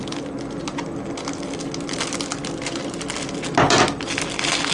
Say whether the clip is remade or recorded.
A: recorded